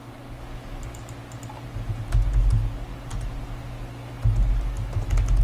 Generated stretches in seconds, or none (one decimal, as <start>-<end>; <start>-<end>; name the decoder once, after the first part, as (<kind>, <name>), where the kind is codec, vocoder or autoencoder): none